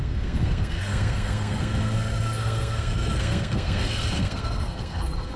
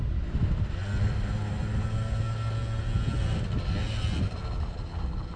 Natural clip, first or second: second